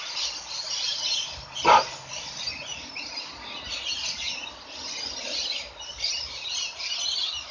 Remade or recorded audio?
recorded